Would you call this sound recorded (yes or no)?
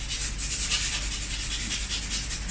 yes